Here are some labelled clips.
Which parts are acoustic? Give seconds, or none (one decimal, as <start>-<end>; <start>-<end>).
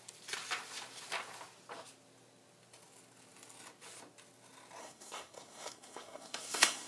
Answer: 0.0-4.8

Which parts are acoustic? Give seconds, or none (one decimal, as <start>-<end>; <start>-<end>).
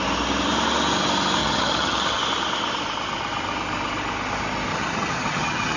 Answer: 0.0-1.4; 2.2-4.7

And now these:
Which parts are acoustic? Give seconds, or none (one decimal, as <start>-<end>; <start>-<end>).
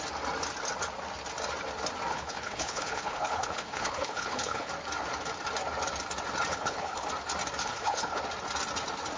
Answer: 0.0-2.1; 4.7-6.5; 7.1-7.6; 8.2-9.2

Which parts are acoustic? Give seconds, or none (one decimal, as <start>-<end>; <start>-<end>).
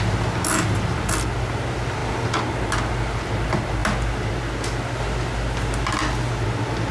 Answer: 0.0-6.9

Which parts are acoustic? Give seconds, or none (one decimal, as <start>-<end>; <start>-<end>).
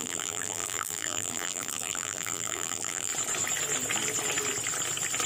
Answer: 3.1-5.3